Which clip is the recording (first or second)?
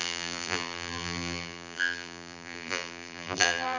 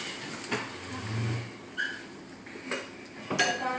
second